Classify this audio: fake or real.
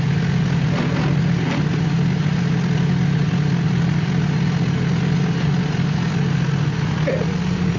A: real